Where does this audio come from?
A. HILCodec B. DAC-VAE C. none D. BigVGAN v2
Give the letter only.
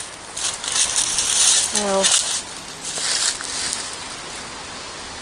C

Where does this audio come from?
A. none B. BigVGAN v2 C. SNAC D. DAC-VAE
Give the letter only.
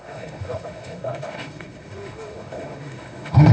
D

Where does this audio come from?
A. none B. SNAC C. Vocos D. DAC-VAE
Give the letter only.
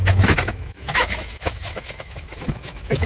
D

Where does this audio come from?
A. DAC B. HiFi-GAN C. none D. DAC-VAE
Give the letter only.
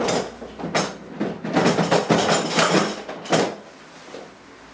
C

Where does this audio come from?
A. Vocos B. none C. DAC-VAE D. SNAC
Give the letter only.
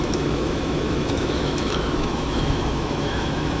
C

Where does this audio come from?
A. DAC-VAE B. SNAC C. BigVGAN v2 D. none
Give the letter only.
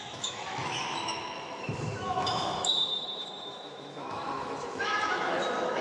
A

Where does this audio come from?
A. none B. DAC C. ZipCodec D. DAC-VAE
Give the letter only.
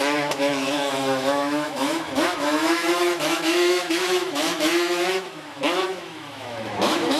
D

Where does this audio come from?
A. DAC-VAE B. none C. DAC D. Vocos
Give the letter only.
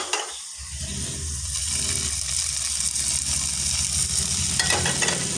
B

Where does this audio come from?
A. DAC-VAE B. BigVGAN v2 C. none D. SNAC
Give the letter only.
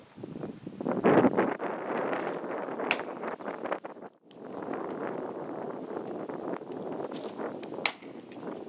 C